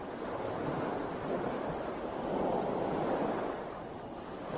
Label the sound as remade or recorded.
recorded